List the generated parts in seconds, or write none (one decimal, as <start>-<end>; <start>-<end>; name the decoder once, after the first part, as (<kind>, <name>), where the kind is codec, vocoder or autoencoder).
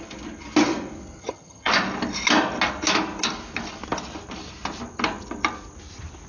1.2-1.7 (vocoder, HiFi-GAN)